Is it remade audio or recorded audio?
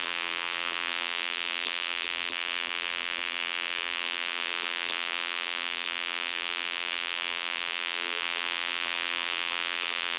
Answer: remade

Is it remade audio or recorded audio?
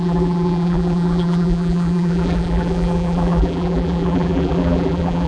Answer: remade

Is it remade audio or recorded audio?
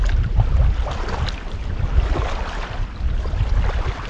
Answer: recorded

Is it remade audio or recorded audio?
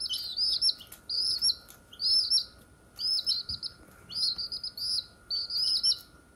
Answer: recorded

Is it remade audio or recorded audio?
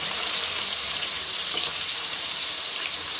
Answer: remade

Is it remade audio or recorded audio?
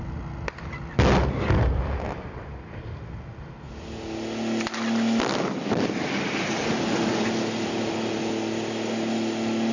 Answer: recorded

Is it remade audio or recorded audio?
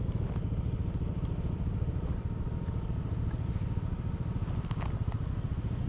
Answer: recorded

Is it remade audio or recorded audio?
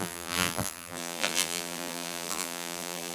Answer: remade